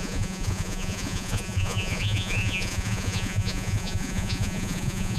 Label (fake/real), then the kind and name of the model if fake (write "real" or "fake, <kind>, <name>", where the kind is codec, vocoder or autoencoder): fake, vocoder, Vocos